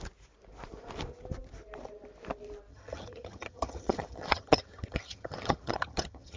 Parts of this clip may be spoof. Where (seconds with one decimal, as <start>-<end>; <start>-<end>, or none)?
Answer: 2.7-6.4